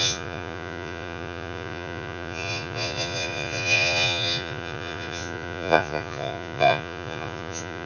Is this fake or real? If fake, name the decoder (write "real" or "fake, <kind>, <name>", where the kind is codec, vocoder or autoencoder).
fake, vocoder, Vocos